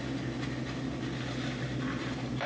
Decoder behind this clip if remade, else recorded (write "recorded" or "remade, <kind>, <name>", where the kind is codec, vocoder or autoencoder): recorded